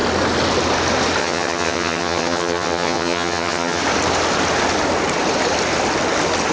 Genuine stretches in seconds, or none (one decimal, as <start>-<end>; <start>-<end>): 0.0-1.2; 3.8-6.5